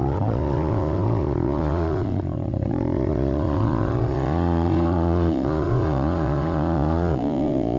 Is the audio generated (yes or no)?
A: yes